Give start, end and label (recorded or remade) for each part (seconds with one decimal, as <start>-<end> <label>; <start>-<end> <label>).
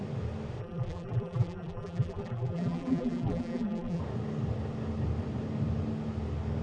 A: 0.0-0.6 recorded; 0.6-4.0 remade; 4.0-6.6 recorded